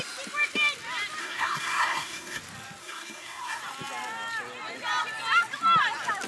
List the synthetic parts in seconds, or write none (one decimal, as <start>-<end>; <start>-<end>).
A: 1.2-2.4; 2.8-3.6